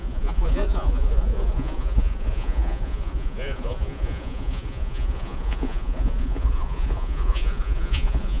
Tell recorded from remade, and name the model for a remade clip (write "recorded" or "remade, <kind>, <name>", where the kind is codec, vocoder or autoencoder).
remade, vocoder, Vocos